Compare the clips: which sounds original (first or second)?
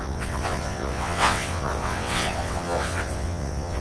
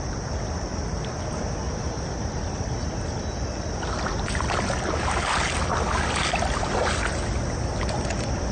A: second